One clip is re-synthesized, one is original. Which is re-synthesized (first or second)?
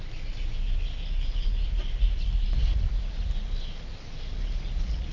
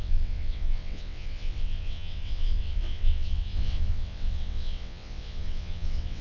second